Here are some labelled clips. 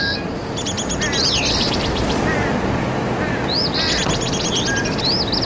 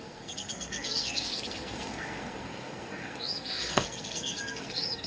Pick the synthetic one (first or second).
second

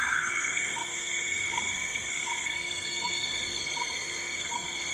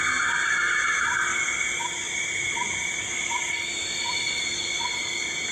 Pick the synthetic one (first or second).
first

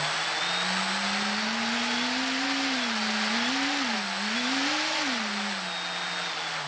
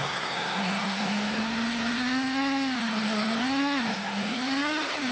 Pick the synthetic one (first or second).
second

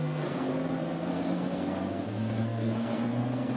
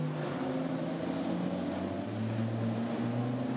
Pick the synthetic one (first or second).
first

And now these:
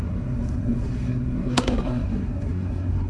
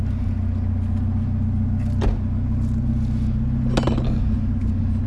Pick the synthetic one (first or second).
first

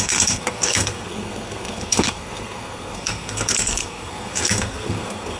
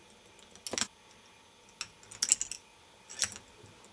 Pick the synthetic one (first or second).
first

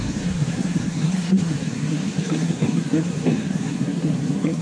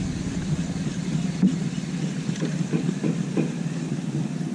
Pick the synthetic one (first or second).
first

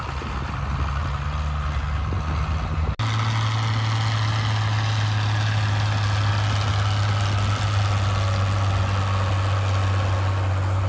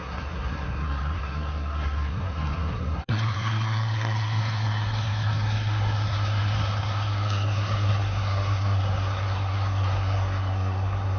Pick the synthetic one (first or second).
second